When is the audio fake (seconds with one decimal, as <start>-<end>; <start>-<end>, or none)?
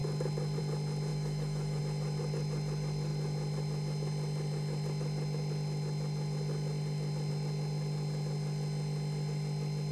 1.1-1.8